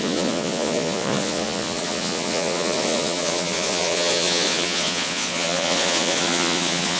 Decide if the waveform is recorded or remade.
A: remade